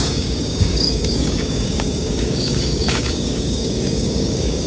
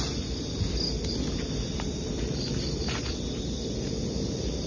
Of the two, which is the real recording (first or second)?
second